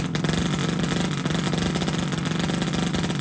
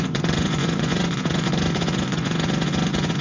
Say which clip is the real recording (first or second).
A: first